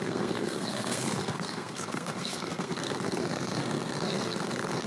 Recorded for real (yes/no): no